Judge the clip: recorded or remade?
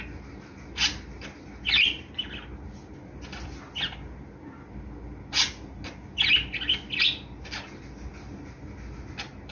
recorded